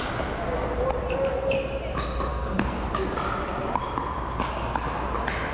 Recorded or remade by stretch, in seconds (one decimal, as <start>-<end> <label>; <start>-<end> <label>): 0.0-2.3 recorded; 2.3-2.9 remade; 2.9-5.5 recorded